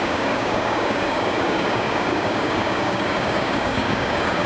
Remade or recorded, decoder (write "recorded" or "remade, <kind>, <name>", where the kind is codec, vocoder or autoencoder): remade, codec, DAC